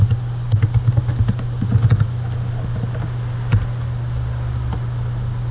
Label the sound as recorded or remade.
recorded